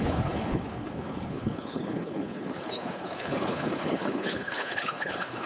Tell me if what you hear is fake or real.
fake